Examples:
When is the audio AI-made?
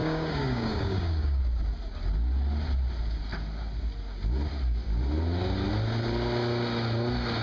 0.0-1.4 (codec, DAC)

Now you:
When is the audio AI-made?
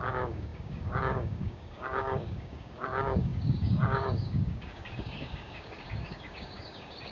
0.0-7.1 (codec, DAC)